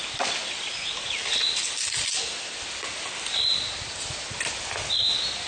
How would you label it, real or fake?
real